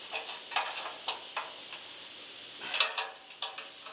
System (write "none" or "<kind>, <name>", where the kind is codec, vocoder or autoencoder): none